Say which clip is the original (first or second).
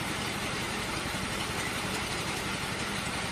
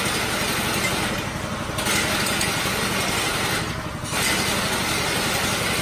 second